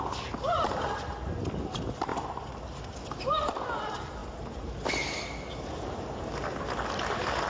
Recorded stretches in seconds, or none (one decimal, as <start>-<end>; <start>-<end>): 0.0-7.5